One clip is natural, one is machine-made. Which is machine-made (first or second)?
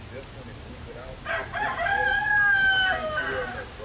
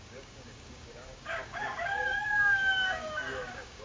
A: second